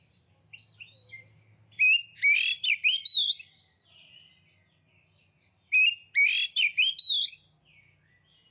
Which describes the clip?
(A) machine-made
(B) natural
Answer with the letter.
B